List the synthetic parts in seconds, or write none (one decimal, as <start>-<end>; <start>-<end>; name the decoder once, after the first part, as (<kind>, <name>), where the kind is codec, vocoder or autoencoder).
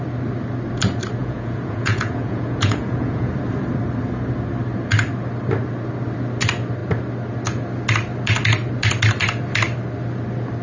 1.2-3.3 (vocoder, Vocos)